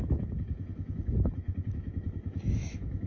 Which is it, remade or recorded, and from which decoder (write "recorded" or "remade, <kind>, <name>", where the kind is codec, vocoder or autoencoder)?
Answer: remade, autoencoder, DAC-VAE